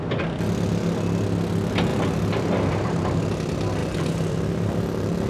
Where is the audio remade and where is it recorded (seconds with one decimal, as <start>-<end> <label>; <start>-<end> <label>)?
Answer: 0.0-1.9 recorded; 1.9-3.2 remade; 3.2-3.8 recorded; 3.8-4.3 remade; 4.3-5.3 recorded